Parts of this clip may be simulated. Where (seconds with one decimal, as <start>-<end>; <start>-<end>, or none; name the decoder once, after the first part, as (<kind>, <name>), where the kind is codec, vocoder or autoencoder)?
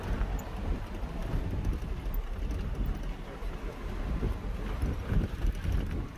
none